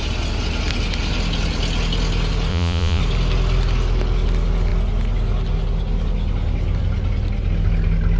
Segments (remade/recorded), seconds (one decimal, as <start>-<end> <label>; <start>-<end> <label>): 0.0-2.5 recorded; 2.5-3.0 remade; 3.0-8.2 recorded